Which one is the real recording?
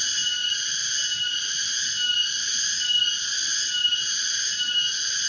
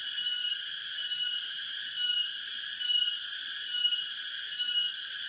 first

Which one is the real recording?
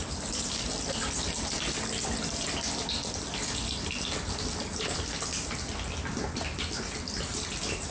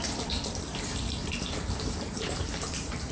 first